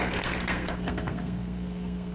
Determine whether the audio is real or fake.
fake